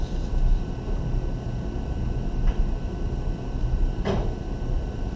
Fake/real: real